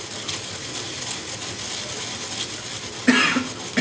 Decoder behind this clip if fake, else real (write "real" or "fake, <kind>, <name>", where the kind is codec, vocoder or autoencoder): real